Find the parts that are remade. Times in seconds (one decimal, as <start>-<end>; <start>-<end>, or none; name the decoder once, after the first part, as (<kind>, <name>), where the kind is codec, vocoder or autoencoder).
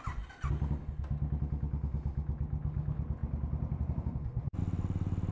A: none